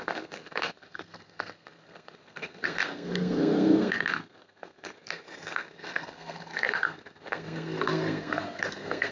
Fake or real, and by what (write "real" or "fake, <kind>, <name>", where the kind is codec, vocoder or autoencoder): fake, codec, SNAC